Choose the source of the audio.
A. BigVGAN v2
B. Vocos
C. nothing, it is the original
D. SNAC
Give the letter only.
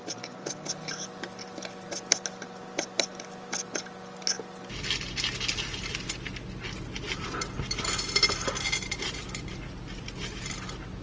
C